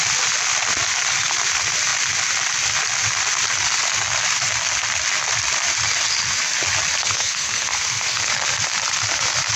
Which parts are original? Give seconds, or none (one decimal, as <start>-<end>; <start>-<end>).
0.0-7.0; 8.3-9.6